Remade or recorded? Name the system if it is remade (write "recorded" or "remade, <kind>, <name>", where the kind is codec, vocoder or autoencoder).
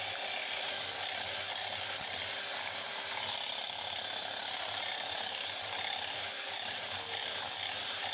recorded